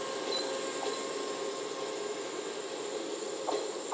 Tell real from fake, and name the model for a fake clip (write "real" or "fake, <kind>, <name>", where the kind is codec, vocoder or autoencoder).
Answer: real